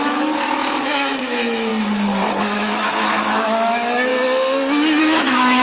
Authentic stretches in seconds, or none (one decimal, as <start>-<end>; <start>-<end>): 1.7-2.4; 4.1-5.0